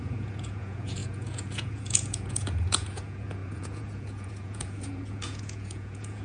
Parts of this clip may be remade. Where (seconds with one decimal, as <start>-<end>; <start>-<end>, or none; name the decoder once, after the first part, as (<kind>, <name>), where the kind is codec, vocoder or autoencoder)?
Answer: 0.0-6.2 (vocoder, Vocos)